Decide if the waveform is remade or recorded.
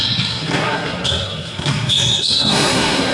remade